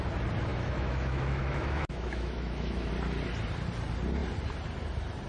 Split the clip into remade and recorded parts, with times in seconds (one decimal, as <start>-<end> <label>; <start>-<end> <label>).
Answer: 0.0-0.5 recorded; 0.5-2.9 remade; 2.9-5.3 recorded